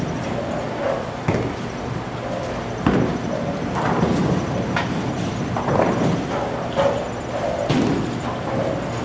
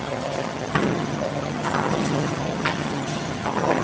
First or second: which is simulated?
second